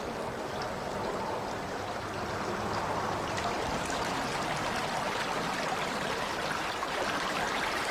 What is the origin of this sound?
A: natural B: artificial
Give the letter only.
A